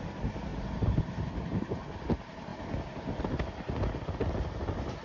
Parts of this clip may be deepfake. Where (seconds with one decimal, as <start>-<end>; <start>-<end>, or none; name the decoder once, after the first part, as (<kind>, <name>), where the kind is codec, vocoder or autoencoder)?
none